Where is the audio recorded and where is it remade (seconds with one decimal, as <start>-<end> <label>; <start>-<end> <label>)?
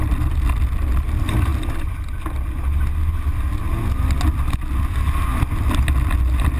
0.0-6.6 recorded